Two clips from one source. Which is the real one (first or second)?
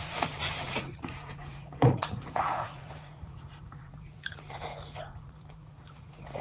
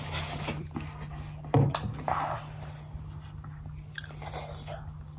second